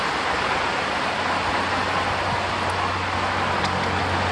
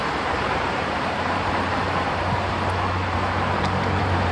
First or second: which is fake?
second